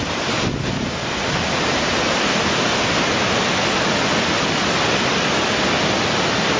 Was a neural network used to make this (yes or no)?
no